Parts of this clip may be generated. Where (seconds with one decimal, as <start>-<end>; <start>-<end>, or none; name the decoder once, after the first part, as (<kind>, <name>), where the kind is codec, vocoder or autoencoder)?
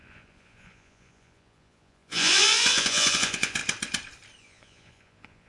0.0-3.6 (vocoder, Vocos); 4.4-5.5